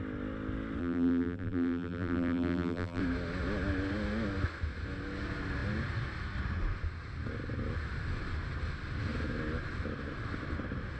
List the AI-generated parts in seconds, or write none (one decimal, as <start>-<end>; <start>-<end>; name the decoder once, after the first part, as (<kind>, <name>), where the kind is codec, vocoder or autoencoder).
0.8-3.0 (vocoder, BigVGAN v2)